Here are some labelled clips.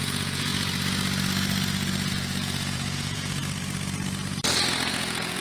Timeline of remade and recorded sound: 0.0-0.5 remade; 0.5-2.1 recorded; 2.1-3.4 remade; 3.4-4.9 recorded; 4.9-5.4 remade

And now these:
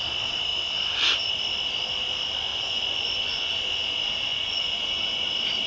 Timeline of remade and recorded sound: 0.0-2.5 recorded; 2.5-3.5 remade; 3.5-4.3 recorded; 4.3-5.2 remade; 5.2-5.7 recorded

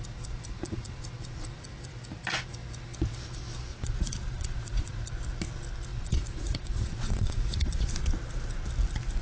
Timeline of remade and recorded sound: 0.0-0.5 recorded; 0.5-1.0 remade; 1.0-3.7 recorded; 3.7-5.1 remade; 5.1-5.9 recorded; 5.9-7.8 remade; 7.8-9.2 recorded

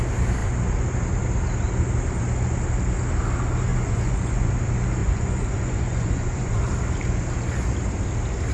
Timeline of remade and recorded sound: 0.0-3.7 recorded; 3.7-4.5 remade; 4.5-5.0 recorded; 5.0-6.6 remade; 6.6-8.5 recorded

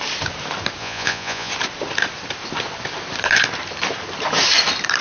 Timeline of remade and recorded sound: 0.0-0.8 recorded; 0.8-1.5 remade; 1.5-5.0 recorded

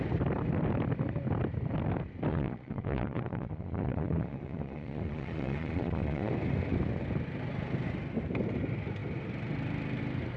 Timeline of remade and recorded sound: 0.0-2.3 recorded; 2.3-6.3 remade; 6.3-10.4 recorded

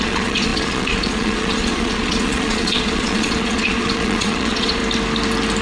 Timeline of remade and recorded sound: 0.0-4.8 remade; 4.8-5.6 recorded